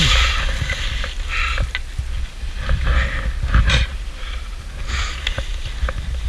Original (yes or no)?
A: yes